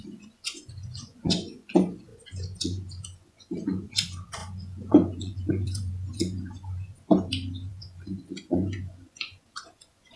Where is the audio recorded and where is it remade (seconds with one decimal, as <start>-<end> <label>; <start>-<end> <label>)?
0.0-7.1 remade; 7.1-7.7 recorded; 7.7-10.2 remade